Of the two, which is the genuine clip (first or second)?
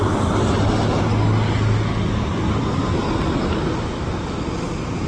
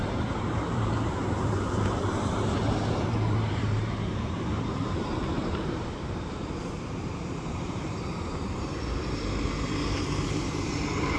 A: first